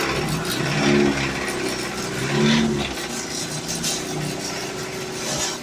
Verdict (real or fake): real